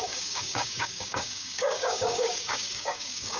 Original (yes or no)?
no